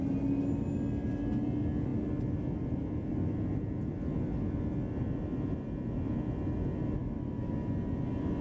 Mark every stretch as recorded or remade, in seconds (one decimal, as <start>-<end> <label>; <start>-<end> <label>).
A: 0.0-7.0 recorded; 7.0-7.5 remade; 7.5-8.4 recorded